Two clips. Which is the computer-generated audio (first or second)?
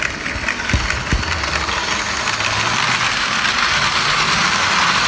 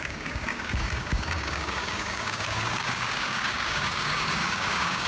second